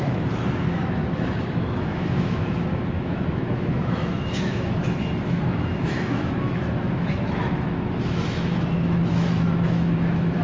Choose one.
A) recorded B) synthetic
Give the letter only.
B